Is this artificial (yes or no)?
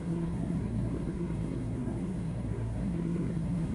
yes